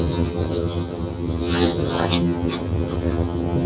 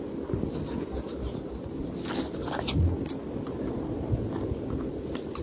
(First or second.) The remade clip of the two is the first